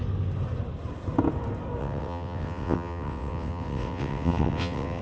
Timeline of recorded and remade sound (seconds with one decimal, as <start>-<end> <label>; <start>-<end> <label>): 0.0-1.8 recorded; 1.8-5.0 remade